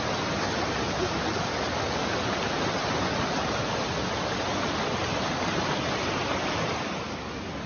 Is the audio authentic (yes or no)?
yes